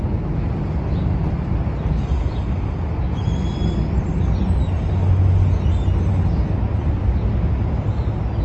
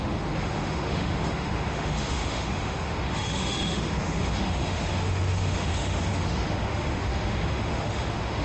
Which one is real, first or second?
first